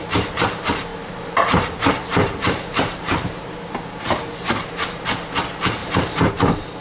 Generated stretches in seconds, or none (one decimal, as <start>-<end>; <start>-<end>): 0.9-5.0; 5.8-6.3

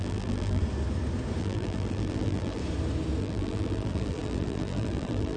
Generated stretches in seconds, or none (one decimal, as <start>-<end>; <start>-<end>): 0.0-0.6; 1.4-2.6; 3.2-5.4

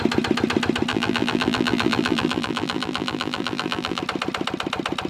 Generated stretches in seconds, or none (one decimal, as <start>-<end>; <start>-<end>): 0.9-4.0

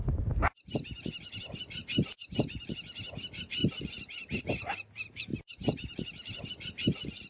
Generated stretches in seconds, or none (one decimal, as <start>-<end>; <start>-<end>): 1.8-2.7; 5.3-6.4

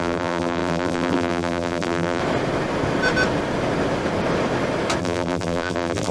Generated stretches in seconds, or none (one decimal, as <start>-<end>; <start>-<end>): 0.0-2.2; 5.0-6.1